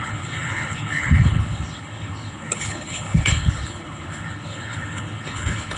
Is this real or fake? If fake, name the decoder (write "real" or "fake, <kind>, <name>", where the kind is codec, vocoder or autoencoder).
fake, codec, HILCodec